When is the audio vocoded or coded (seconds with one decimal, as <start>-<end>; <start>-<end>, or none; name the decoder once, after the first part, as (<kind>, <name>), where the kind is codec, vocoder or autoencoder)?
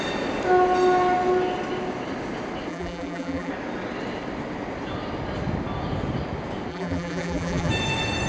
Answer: 2.7-3.5 (vocoder, BigVGAN v2); 6.7-7.7